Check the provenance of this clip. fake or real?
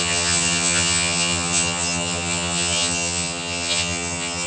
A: fake